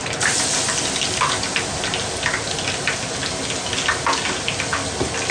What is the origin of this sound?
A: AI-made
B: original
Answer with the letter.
B